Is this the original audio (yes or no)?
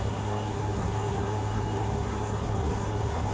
no